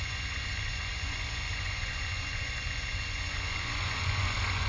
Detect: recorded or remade remade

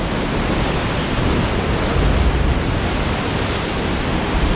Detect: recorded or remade recorded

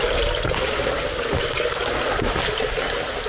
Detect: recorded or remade recorded